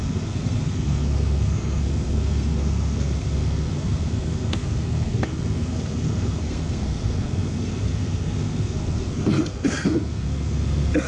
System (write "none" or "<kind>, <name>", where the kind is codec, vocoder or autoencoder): codec, SNAC